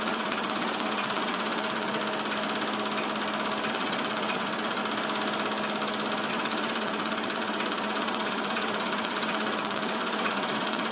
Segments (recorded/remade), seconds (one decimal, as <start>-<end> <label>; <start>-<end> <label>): 0.0-2.0 remade; 2.0-3.7 recorded; 3.7-4.8 remade; 4.8-6.3 recorded; 6.3-10.9 remade